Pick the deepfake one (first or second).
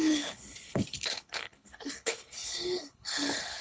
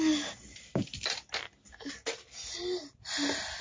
first